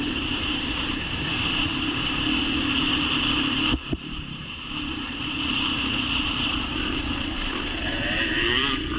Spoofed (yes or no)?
yes